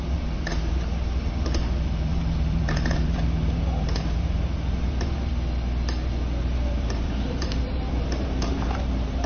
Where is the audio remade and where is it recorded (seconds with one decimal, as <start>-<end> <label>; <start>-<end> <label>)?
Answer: 0.0-5.3 remade; 5.3-6.4 recorded; 6.4-9.3 remade